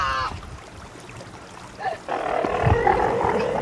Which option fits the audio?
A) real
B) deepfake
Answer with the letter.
A